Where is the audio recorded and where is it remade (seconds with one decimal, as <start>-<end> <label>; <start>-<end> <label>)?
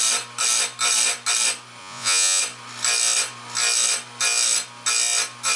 0.0-1.8 recorded; 1.8-2.4 remade; 2.4-5.6 recorded